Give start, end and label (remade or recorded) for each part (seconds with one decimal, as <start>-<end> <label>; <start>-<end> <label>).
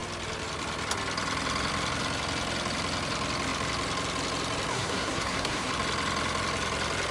0.0-4.7 recorded; 4.7-5.7 remade; 5.7-7.1 recorded